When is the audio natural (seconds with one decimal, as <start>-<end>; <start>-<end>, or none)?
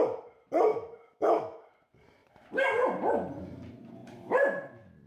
0.0-0.7; 1.7-5.1